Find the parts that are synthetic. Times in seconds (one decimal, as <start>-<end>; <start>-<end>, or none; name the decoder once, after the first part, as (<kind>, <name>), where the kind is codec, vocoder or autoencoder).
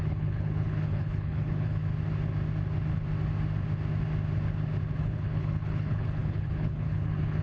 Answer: 0.0-1.8 (codec, HILCodec); 5.0-7.4